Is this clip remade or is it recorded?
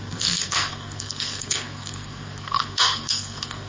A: remade